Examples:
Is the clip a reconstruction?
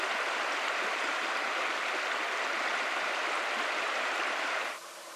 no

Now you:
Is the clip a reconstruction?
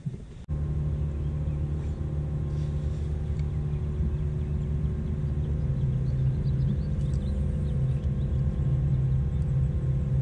no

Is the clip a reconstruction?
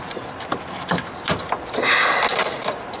no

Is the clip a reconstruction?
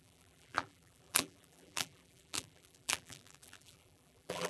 yes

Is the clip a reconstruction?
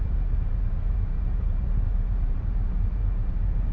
yes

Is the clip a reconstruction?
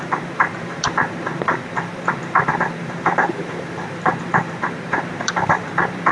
yes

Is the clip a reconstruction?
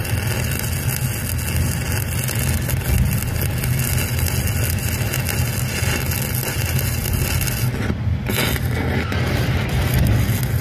no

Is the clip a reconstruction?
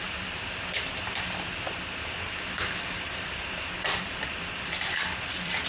yes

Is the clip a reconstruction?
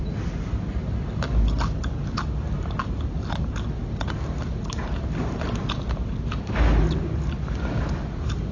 no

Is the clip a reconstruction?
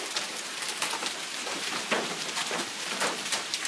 yes